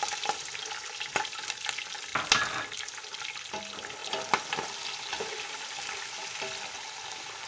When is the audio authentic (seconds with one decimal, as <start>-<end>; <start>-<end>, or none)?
0.0-7.5